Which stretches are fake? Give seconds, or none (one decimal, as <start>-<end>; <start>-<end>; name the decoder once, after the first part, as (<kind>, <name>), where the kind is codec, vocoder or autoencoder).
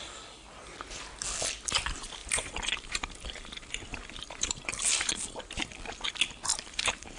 2.2-5.4 (vocoder, BigVGAN v2); 6.5-7.2